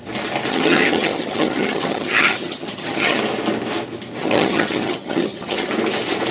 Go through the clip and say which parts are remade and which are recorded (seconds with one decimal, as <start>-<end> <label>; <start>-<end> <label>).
0.0-0.5 recorded; 0.5-3.2 remade; 3.2-4.2 recorded; 4.2-5.7 remade; 5.7-6.3 recorded